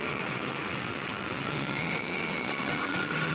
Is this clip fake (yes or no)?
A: yes